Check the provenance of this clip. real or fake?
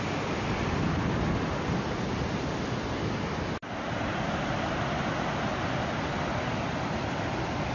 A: real